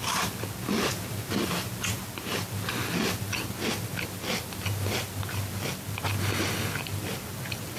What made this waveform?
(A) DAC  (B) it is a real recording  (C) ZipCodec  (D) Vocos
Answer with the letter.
B